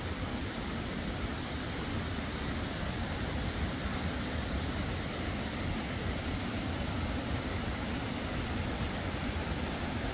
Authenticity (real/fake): fake